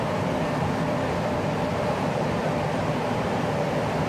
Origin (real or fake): fake